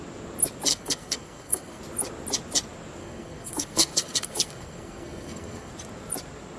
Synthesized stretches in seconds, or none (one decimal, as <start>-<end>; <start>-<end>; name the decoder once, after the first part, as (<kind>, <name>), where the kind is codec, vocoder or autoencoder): 0.7-1.8 (codec, SNAC); 3.0-5.7